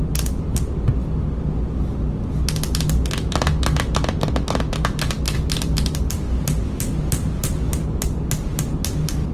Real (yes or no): yes